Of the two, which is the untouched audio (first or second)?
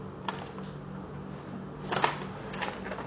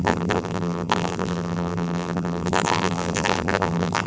first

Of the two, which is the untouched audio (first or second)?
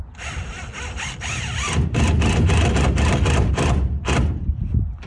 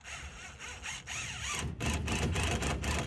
second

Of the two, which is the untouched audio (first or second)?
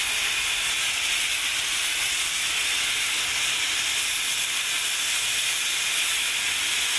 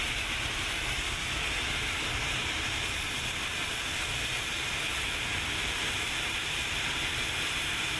first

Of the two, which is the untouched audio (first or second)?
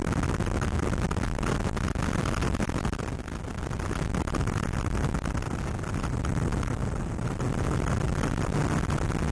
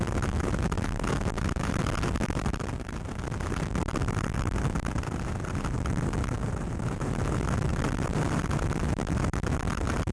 first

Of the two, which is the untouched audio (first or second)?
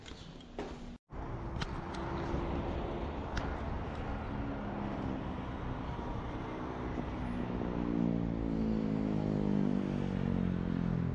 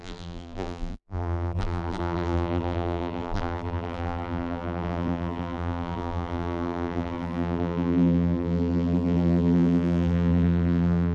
first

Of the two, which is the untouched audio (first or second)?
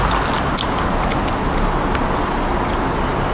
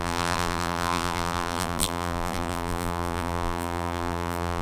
first